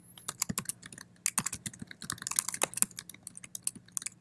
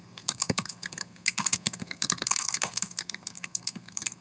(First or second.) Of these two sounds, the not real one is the second